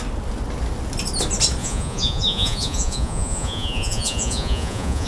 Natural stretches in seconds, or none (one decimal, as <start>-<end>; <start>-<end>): 0.0-1.6